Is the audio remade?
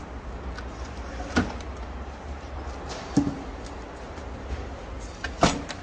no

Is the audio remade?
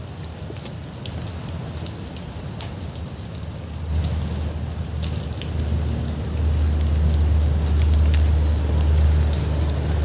no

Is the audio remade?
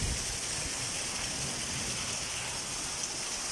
no